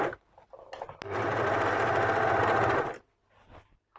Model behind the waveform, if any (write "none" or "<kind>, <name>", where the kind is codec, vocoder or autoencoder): none